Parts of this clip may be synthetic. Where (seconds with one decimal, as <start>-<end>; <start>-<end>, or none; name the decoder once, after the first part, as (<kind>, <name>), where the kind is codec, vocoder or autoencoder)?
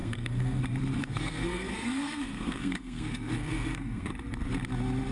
0.0-0.6 (codec, SNAC); 1.0-4.1